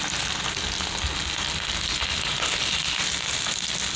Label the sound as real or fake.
real